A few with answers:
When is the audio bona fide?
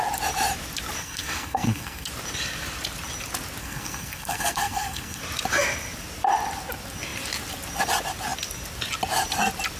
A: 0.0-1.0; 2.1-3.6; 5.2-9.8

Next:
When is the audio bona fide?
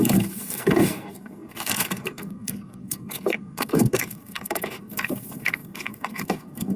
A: none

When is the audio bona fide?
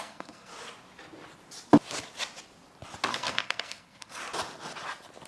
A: 0.5-3.1; 4.2-5.3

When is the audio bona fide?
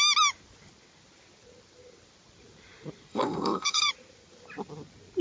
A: 0.0-3.1; 3.9-5.2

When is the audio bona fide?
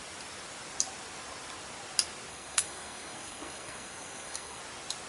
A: 0.0-2.3; 4.6-5.1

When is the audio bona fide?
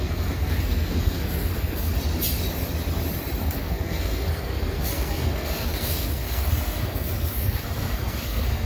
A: 1.9-3.4